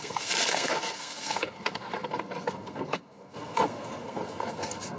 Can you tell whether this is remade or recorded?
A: remade